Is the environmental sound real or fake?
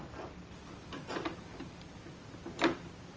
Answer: real